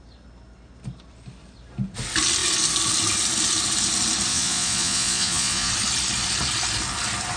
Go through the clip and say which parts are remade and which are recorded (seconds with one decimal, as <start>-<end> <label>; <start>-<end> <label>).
0.0-4.3 recorded; 4.3-5.7 remade; 5.7-7.4 recorded